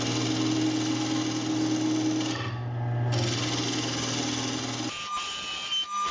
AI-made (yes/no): no